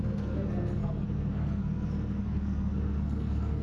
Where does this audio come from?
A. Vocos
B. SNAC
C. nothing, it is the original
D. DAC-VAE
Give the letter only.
B